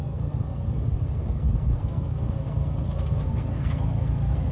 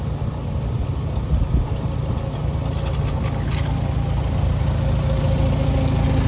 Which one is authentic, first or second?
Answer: second